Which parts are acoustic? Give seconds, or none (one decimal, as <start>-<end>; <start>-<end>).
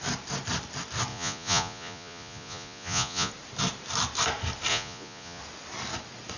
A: 0.0-1.1; 3.3-4.7; 5.4-6.4